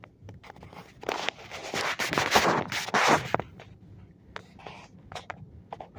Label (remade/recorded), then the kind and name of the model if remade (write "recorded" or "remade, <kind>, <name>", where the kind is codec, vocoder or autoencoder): recorded